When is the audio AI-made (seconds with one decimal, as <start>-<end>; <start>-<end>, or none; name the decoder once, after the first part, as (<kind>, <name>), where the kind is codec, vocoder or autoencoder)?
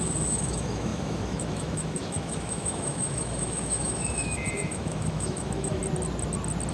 0.0-5.8 (autoencoder, DAC-VAE)